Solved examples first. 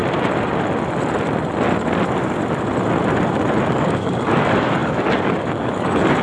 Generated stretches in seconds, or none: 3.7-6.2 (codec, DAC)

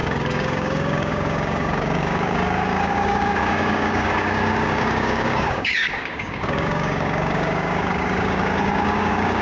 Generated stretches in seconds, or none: 0.0-9.4 (codec, DAC)

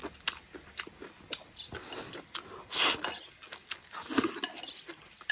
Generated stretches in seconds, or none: none

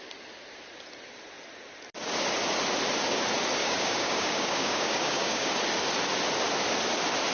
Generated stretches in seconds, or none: 3.6-5.5 (codec, DAC)

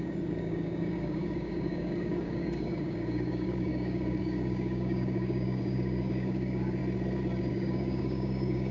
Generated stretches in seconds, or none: 0.0-6.8 (codec, DAC); 7.5-8.7

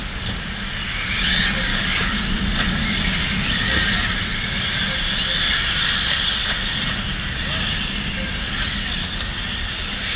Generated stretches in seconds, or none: 1.7-2.2 (codec, DAC)

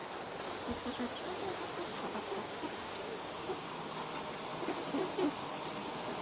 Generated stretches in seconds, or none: 1.9-3.9 (codec, DAC)

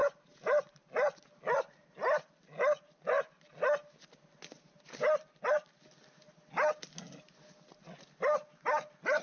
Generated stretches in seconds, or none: none